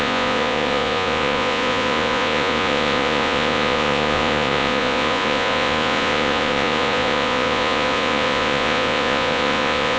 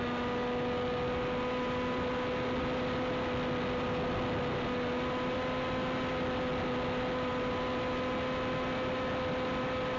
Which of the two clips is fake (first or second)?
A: first